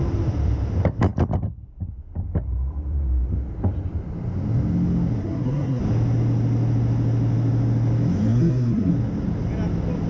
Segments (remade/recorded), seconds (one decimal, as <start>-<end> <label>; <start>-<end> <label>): 0.0-5.2 recorded; 5.2-5.8 remade; 5.8-8.3 recorded; 8.3-8.9 remade; 8.9-10.1 recorded